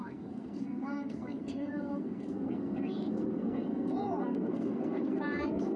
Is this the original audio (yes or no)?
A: no